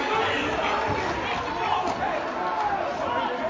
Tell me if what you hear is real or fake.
real